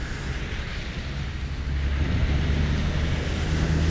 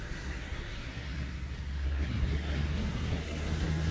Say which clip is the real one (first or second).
first